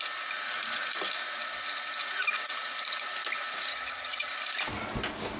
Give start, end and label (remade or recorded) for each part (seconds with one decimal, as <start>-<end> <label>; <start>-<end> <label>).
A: 0.0-3.7 recorded; 3.7-4.3 remade; 4.3-5.4 recorded